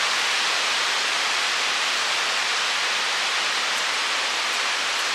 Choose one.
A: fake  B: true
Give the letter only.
B